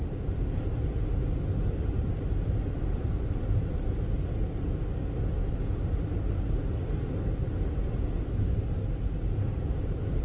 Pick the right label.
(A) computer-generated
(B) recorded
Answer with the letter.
B